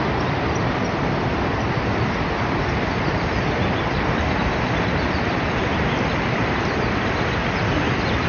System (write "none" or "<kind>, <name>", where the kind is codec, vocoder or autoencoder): none